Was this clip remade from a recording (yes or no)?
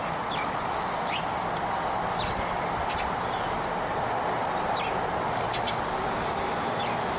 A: no